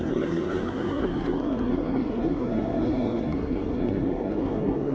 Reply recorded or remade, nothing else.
remade